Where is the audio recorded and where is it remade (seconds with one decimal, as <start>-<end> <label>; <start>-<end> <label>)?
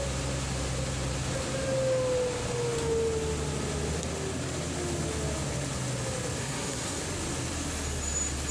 0.0-6.4 recorded; 6.4-7.0 remade; 7.0-8.5 recorded